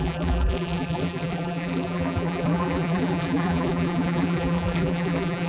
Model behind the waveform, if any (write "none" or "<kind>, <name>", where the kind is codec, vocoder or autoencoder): vocoder, BigVGAN v2